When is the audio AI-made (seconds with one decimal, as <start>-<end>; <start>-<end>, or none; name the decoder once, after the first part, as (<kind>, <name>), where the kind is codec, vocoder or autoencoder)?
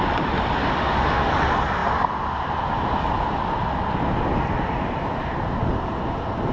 0.6-1.3 (autoencoder, DAC-VAE)